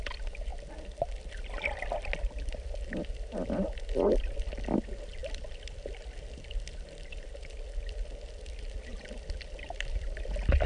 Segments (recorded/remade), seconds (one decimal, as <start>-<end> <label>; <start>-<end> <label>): 0.0-10.7 recorded